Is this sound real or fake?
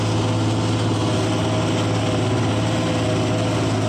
real